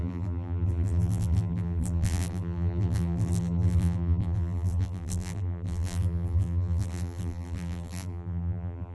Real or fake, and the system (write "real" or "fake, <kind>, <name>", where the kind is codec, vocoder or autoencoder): fake, vocoder, BigVGAN v2